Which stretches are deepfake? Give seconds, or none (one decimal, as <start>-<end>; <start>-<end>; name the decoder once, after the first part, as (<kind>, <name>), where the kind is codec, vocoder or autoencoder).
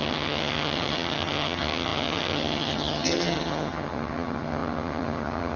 0.0-5.6 (vocoder, HiFi-GAN)